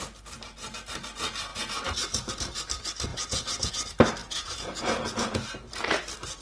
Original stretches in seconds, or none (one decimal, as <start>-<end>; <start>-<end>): 0.0-1.5; 2.3-3.1; 3.7-4.2; 5.7-6.4

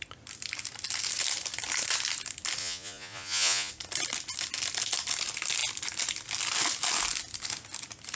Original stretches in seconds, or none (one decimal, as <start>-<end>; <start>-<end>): 0.0-2.6; 3.7-8.2

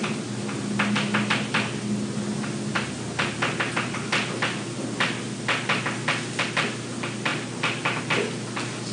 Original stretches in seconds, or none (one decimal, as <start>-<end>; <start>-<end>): 0.0-8.9

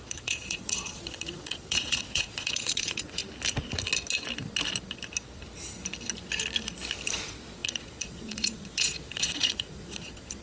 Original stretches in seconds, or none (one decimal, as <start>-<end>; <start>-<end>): 3.2-7.1

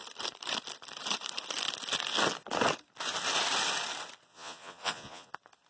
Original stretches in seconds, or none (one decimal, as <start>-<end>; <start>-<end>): 0.0-4.3; 5.3-5.7

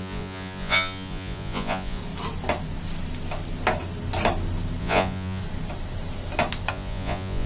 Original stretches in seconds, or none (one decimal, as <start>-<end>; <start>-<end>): 2.0-4.8; 5.4-6.7

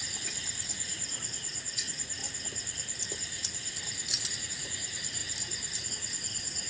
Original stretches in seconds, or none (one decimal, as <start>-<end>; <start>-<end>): 2.2-4.5; 5.2-5.9

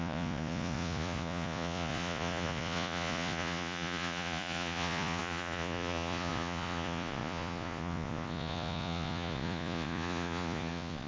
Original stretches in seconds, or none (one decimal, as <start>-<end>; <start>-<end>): none